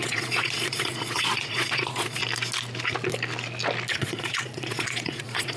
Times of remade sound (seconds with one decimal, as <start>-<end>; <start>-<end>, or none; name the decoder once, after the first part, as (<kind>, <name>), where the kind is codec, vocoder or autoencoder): 0.0-2.2 (vocoder, Vocos); 3.9-5.6